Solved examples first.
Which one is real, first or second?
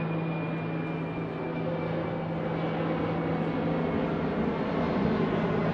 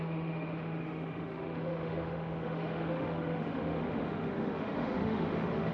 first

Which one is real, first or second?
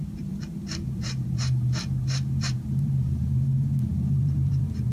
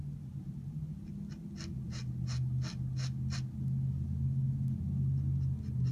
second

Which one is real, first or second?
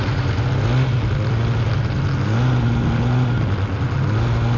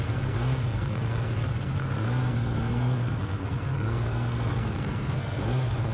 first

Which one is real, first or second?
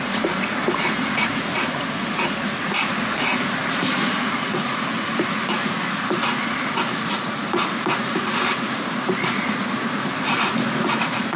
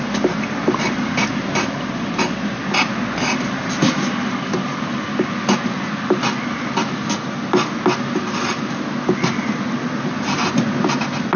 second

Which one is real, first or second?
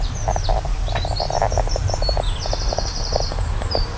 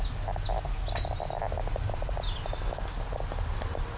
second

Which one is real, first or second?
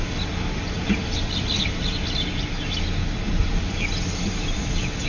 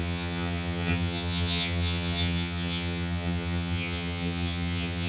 first